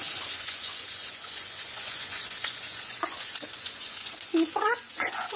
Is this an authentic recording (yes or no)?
no